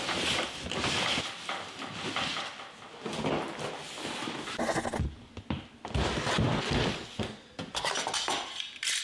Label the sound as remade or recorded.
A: recorded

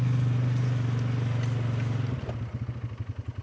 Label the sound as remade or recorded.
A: recorded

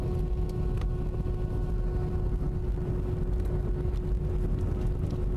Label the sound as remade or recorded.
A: recorded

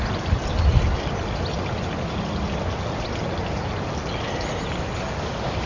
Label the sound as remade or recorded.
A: recorded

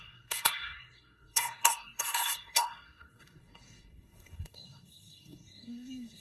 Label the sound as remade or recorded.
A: remade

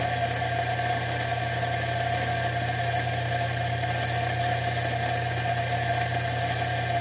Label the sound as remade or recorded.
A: recorded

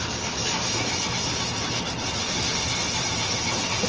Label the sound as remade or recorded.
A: recorded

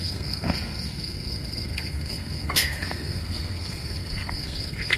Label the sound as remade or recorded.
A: remade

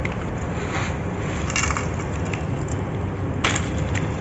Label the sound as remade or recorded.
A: recorded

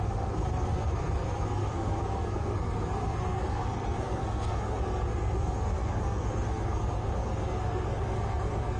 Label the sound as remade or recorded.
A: remade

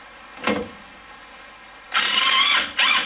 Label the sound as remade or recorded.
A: recorded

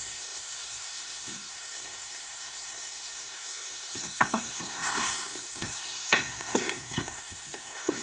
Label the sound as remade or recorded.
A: remade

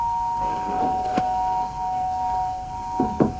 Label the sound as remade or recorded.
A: remade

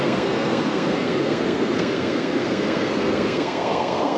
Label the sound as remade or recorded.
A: remade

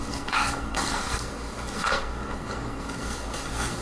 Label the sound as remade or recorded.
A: remade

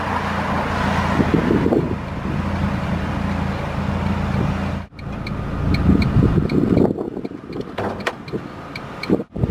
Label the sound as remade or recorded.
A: recorded